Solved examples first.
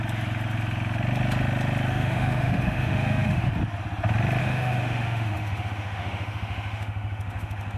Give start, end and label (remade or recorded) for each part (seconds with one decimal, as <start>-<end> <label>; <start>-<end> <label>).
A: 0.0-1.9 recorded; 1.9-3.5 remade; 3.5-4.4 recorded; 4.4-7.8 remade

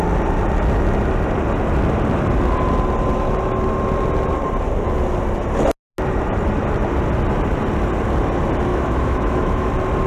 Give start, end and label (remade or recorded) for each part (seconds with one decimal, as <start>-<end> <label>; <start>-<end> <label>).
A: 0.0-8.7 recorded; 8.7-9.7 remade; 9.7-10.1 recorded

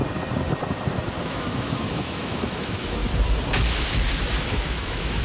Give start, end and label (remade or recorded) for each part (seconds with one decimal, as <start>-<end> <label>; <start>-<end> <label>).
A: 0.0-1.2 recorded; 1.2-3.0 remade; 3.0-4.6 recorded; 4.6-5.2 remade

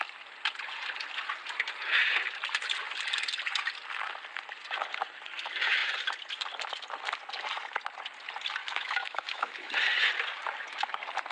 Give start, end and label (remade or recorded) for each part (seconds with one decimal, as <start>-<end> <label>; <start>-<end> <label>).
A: 0.0-8.6 recorded; 8.6-9.7 remade; 9.7-11.3 recorded

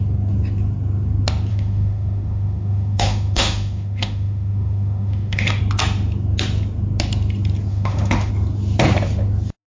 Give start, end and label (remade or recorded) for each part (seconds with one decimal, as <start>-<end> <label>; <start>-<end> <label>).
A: 0.0-1.5 recorded; 1.5-5.6 remade; 5.6-7.7 recorded; 7.7-8.3 remade; 8.3-9.8 recorded